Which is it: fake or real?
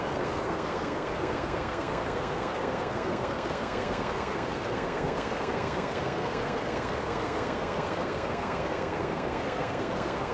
fake